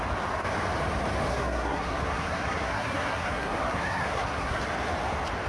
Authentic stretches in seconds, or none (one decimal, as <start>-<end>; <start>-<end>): 0.0-1.3; 4.6-5.5